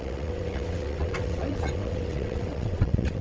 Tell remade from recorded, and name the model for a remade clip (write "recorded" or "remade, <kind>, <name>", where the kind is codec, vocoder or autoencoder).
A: remade, vocoder, WaveNeXt